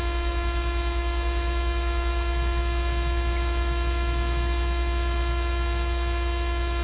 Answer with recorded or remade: recorded